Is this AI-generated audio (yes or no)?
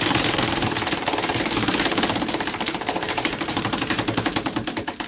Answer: yes